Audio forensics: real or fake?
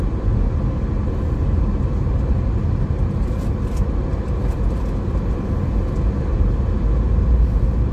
real